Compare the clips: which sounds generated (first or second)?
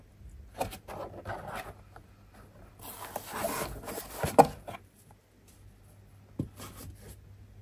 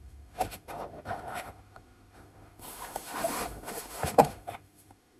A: second